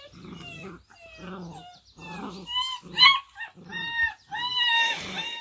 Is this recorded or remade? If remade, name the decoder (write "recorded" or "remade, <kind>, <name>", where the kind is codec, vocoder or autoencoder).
recorded